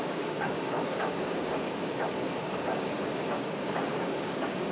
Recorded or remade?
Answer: remade